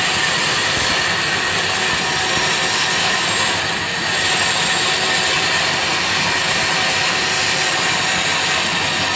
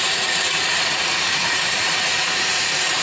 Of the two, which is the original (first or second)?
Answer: first